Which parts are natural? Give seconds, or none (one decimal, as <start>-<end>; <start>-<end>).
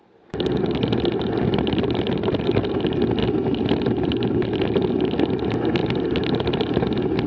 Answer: 2.8-3.2; 4.9-5.8; 6.8-7.3